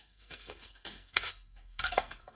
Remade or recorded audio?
remade